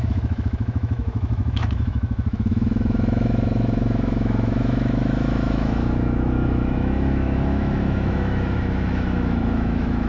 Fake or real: fake